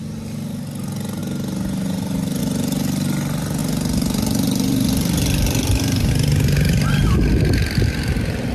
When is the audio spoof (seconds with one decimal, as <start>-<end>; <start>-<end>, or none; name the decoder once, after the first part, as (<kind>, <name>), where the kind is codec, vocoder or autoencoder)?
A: 3.6-6.1 (vocoder, BigVGAN v2)